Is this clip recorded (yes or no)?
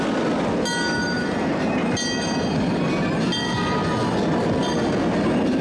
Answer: yes